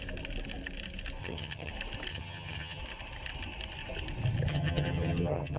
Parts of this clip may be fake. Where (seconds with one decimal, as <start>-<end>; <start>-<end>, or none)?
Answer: 1.2-1.7; 2.1-2.8; 4.5-5.6